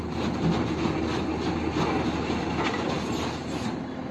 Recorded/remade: recorded